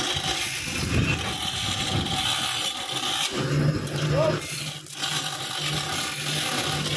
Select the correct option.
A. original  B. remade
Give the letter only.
A